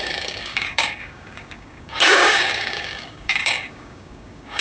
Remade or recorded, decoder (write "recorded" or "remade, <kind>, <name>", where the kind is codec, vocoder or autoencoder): remade, codec, DAC